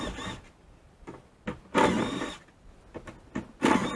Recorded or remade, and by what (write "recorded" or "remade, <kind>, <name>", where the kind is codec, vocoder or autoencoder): recorded